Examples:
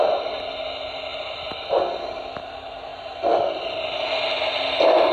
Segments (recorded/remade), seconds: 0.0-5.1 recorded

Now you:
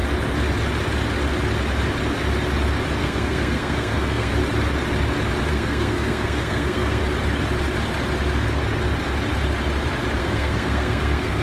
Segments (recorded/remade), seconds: 0.0-3.0 recorded; 3.0-4.3 remade; 4.3-5.5 recorded; 5.5-7.0 remade; 7.0-10.2 recorded; 10.2-11.4 remade

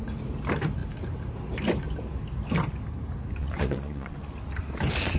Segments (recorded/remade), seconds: 0.0-3.4 recorded; 3.4-4.3 remade; 4.3-5.2 recorded